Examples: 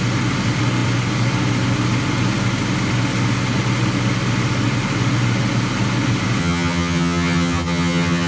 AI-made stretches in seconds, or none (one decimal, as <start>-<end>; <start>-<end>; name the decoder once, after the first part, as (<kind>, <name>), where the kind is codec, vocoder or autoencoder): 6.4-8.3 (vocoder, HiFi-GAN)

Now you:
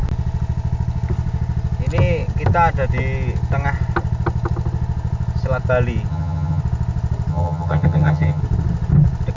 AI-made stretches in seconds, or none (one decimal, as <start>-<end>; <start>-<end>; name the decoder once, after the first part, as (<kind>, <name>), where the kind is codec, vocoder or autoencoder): 6.1-6.6 (vocoder, HiFi-GAN); 7.3-8.4

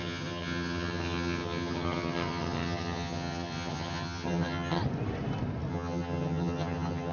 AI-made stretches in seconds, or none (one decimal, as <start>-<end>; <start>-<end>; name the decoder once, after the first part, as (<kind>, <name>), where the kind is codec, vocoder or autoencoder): 0.0-4.8 (vocoder, HiFi-GAN); 5.7-7.1